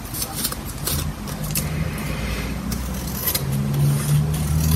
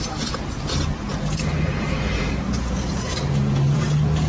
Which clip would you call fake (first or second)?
second